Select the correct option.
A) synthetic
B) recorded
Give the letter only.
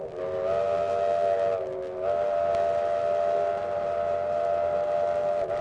B